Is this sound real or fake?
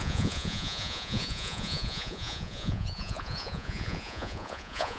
fake